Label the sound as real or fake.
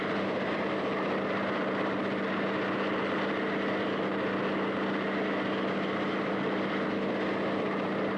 real